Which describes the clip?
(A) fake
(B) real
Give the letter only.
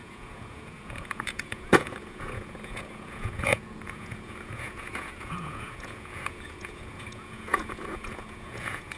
A